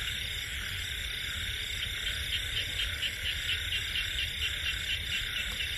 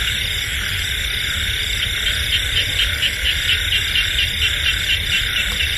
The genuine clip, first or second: second